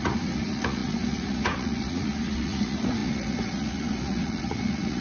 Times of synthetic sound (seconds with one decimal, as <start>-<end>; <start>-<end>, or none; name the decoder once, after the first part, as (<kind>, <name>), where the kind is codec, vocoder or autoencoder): 0.0-5.0 (vocoder, Vocos)